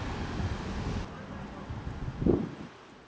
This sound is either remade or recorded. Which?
recorded